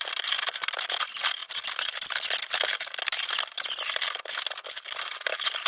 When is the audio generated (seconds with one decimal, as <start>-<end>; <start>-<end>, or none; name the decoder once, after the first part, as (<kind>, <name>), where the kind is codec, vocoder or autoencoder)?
none